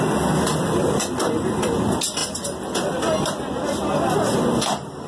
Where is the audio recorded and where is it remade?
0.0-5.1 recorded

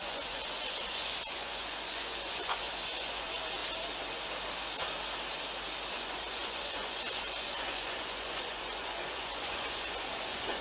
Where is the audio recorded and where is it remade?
0.0-3.6 remade; 3.6-5.9 recorded; 5.9-10.6 remade

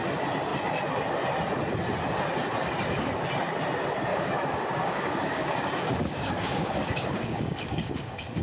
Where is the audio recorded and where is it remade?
0.0-4.1 recorded; 4.1-8.4 remade

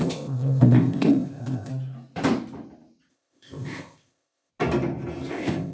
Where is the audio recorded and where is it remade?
0.0-1.7 remade; 1.7-3.1 recorded; 3.1-4.5 remade; 4.5-5.3 recorded; 5.3-5.7 remade

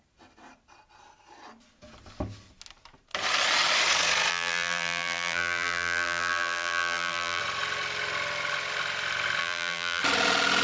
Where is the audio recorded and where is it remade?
0.0-4.3 recorded; 4.3-7.4 remade; 7.4-9.4 recorded; 9.4-10.0 remade; 10.0-10.6 recorded